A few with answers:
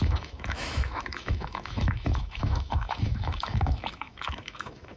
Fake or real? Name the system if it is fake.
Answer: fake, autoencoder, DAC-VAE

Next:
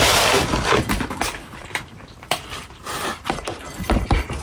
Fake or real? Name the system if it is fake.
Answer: fake, vocoder, BigVGAN v2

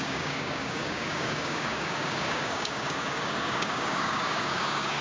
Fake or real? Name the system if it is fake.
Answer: fake, codec, DAC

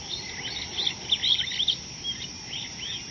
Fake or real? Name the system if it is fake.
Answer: real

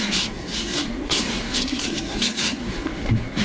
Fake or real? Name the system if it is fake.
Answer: fake, codec, SNAC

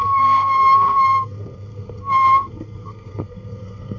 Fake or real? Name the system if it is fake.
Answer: fake, codec, SNAC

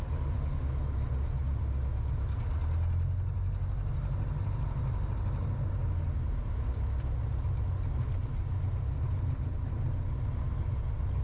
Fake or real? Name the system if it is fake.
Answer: real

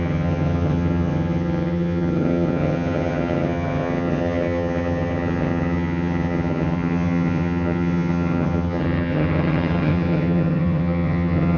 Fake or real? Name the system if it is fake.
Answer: fake, vocoder, HiFi-GAN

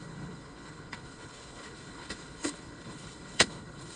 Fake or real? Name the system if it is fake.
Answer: fake, codec, HILCodec